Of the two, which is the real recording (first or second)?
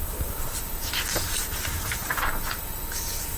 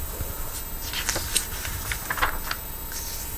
second